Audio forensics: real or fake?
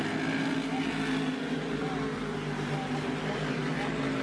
real